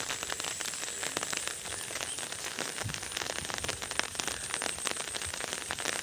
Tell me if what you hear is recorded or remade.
recorded